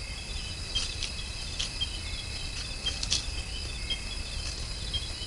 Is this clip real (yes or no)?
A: yes